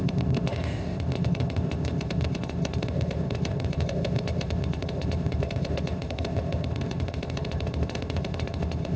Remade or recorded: remade